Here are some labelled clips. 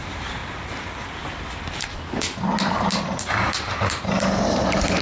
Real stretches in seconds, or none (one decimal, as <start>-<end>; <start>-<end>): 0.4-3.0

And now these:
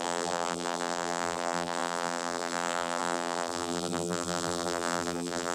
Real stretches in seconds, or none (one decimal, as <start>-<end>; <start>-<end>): none

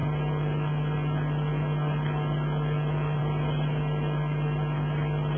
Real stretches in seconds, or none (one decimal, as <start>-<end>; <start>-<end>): 0.0-5.4